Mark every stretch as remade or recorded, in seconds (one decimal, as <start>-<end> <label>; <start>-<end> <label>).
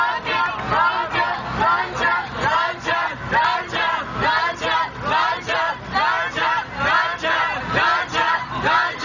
0.0-9.0 recorded